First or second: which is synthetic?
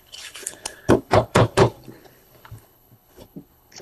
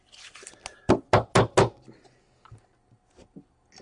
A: first